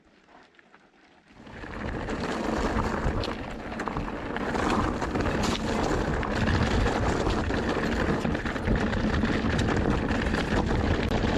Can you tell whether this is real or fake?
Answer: real